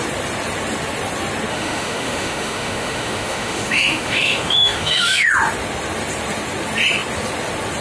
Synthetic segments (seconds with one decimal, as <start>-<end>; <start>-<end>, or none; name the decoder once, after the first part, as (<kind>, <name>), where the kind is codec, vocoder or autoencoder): 1.5-5.3 (autoencoder, DAC-VAE)